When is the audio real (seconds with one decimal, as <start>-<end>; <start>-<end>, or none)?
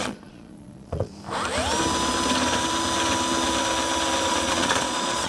1.1-4.3